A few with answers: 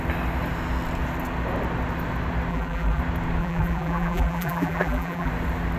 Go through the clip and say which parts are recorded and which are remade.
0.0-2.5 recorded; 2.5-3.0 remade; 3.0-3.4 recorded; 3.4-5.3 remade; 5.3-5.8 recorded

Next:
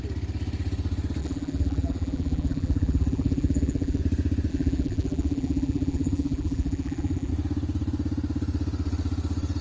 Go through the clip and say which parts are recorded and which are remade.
0.0-1.2 recorded; 1.2-4.0 remade; 4.0-4.5 recorded; 4.5-7.3 remade; 7.3-9.6 recorded

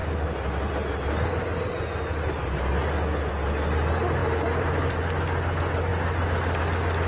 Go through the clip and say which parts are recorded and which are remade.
0.0-4.2 recorded; 4.2-5.0 remade; 5.0-7.1 recorded

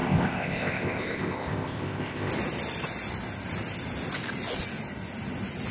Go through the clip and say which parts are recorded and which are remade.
0.0-2.3 remade; 2.3-5.7 recorded